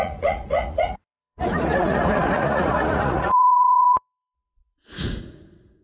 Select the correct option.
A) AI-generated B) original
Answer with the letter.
A